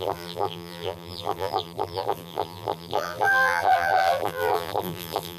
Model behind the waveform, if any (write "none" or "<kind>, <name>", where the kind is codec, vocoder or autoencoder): vocoder, BigVGAN v2